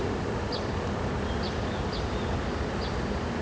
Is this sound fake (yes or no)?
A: no